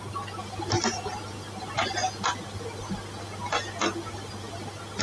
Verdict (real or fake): real